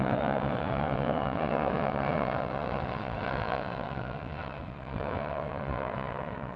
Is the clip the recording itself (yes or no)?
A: no